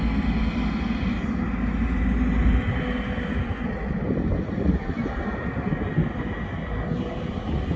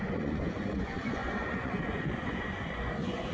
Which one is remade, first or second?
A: second